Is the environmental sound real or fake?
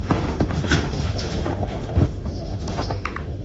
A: fake